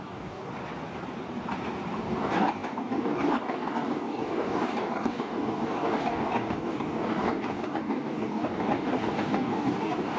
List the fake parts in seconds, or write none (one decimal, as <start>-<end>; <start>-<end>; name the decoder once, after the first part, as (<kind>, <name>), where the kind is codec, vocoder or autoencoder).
0.0-0.5 (codec, DAC); 2.0-10.2